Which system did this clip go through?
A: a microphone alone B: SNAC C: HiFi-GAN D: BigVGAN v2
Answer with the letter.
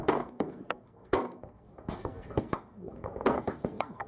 B